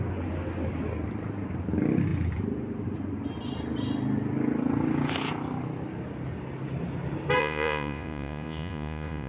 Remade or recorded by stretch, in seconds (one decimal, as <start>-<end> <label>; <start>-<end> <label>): 0.0-7.4 recorded; 7.4-9.3 remade

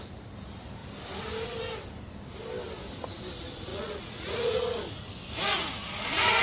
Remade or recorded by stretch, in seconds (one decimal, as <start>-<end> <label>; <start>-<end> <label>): 0.0-3.7 recorded; 3.7-4.6 remade; 4.6-6.4 recorded